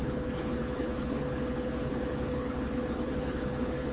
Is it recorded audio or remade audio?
remade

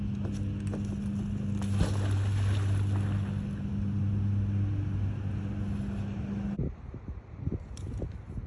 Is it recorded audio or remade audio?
recorded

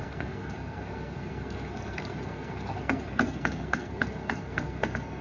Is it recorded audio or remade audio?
remade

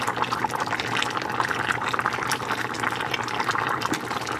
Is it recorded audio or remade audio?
recorded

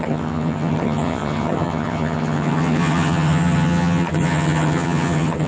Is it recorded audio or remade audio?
remade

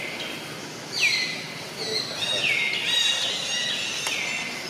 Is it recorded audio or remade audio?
recorded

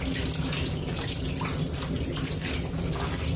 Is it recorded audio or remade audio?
recorded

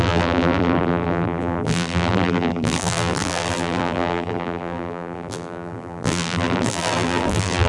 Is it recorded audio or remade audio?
remade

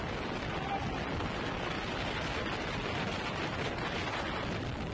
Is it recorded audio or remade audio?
recorded